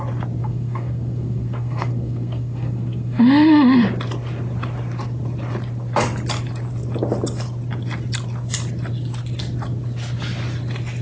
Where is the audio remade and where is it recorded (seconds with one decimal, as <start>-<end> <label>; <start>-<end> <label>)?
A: 0.0-0.4 recorded; 0.4-3.2 remade; 3.2-11.0 recorded